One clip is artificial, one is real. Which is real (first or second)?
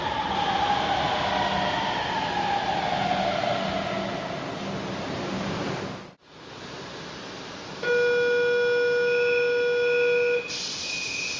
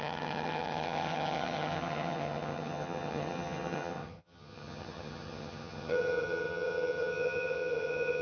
first